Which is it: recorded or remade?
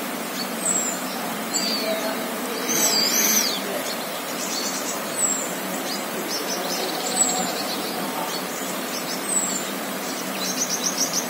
remade